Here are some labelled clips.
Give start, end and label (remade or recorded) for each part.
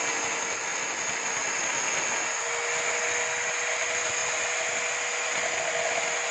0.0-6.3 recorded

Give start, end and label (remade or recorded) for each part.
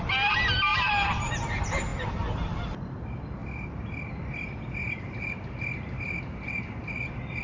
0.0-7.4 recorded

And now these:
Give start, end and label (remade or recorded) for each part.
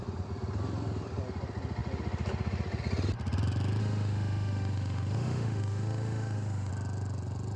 0.0-3.8 recorded; 3.8-6.7 remade; 6.7-7.6 recorded